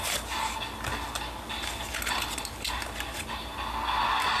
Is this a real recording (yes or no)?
yes